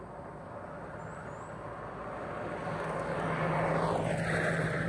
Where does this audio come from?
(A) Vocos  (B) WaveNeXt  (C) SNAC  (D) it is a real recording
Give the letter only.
D